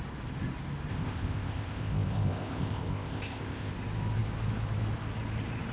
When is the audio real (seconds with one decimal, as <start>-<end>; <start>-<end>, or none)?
0.0-0.9; 3.7-5.7